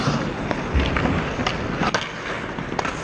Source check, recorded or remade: recorded